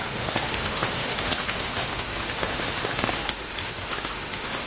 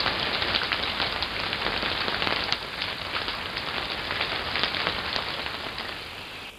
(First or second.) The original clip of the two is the second